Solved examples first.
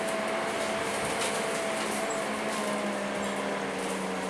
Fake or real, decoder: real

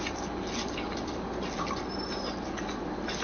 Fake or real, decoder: real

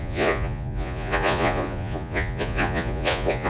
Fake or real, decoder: fake, vocoder, Vocos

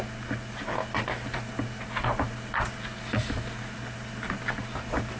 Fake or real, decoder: real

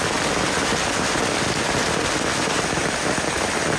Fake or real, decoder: real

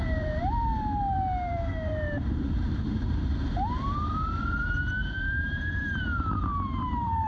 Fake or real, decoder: fake, vocoder, BigVGAN v2